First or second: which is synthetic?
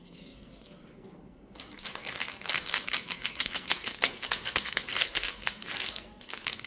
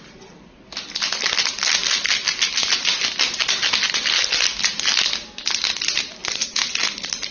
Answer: first